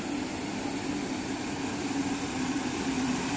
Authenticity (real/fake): real